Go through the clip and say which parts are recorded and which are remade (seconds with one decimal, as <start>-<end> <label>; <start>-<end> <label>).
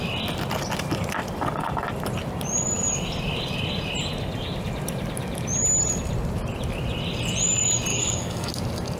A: 0.0-7.9 recorded; 7.9-8.5 remade; 8.5-9.0 recorded